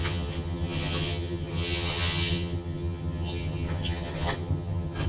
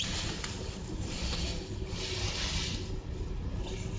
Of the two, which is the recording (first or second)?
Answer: second